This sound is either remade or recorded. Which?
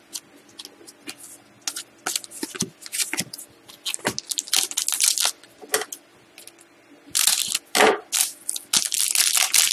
recorded